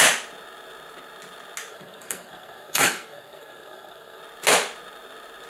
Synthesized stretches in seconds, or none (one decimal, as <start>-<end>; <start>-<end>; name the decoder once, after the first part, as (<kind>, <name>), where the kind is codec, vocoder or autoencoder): 1.7-4.2 (codec, SNAC)